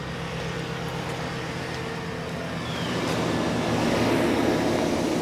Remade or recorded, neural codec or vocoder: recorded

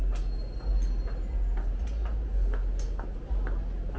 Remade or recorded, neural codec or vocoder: recorded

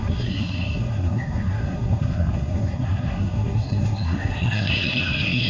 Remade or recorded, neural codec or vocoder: remade, codec, SNAC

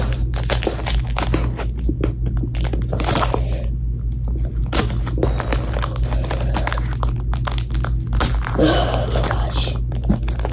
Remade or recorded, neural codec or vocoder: recorded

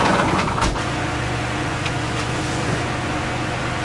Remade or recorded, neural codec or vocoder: remade, vocoder, Vocos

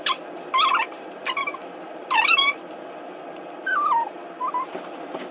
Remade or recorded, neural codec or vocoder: recorded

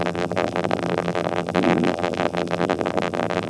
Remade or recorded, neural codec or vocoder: remade, vocoder, BigVGAN v2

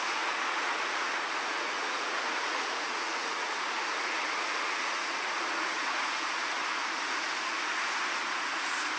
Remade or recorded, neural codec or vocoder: remade, vocoder, Vocos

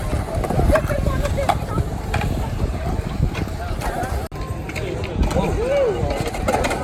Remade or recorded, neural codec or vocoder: recorded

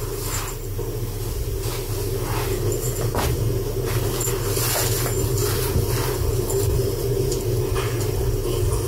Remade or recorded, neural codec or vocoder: recorded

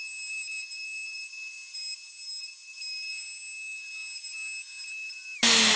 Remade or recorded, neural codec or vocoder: recorded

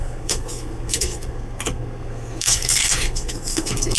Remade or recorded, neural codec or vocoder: remade, codec, SNAC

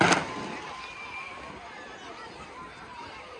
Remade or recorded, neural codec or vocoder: recorded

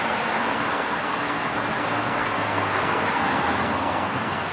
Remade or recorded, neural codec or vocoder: remade, codec, SNAC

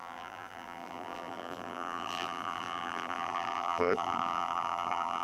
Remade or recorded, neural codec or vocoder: remade, vocoder, BigVGAN v2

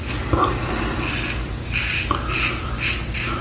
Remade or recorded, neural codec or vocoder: recorded